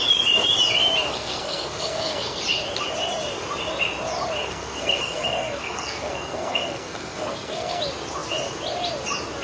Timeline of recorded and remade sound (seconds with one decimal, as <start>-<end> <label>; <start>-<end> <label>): 0.0-1.1 recorded; 1.1-2.4 remade; 2.4-4.4 recorded; 4.4-7.8 remade; 7.8-9.4 recorded